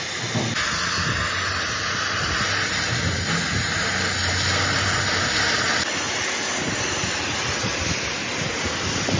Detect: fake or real real